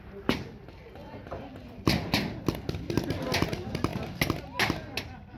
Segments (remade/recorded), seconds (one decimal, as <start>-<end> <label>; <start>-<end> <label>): 0.0-5.4 recorded